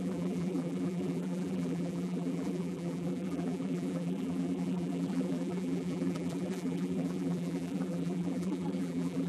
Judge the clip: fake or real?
fake